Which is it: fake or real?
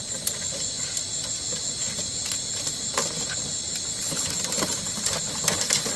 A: real